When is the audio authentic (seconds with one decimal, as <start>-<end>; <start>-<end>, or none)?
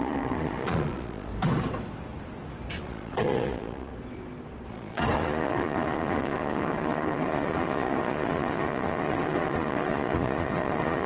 1.3-2.8; 3.9-4.7